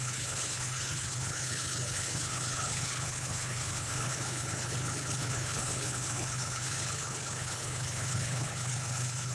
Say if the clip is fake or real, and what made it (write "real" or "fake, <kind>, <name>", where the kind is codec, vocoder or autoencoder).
fake, codec, HILCodec